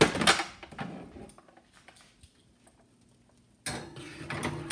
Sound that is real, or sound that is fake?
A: real